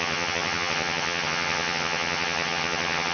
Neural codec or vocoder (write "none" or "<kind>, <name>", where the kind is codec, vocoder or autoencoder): vocoder, HiFi-GAN